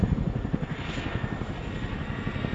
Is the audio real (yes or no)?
yes